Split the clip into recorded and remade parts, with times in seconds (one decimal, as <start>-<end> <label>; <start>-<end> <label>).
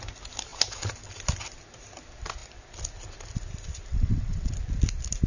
0.0-3.9 recorded; 3.9-4.5 remade; 4.5-5.3 recorded